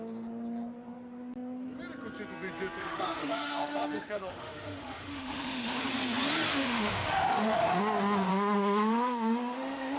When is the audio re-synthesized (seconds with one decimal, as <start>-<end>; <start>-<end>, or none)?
2.8-5.8; 6.5-7.8; 8.3-10.0